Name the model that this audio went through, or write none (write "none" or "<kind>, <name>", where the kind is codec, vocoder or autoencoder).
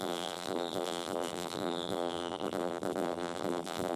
vocoder, BigVGAN v2